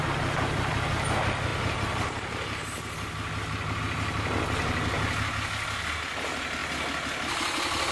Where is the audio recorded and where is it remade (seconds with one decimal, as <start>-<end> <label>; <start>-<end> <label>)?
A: 0.0-7.9 recorded